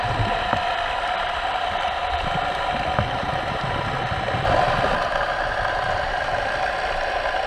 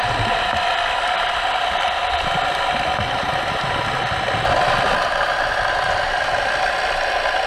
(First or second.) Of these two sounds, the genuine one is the second